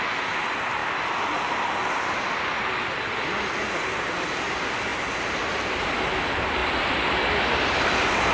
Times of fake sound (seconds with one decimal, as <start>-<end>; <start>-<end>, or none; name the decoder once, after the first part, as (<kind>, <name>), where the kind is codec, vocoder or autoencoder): none